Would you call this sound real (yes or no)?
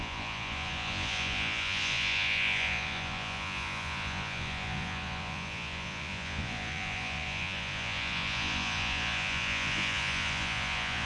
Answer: no